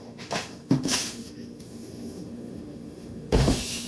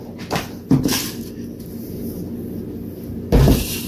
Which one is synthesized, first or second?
first